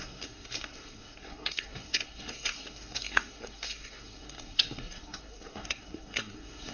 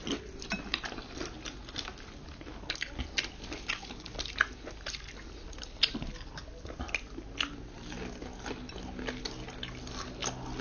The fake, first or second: first